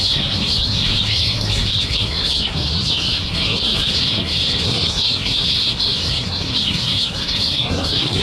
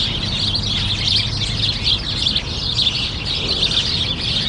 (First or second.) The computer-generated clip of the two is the first